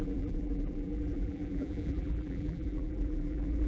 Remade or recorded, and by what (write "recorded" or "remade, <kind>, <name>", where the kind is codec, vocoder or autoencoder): remade, vocoder, BigVGAN v2